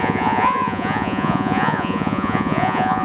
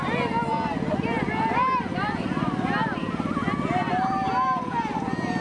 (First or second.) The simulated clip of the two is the first